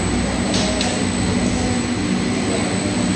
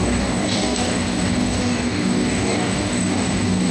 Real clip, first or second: first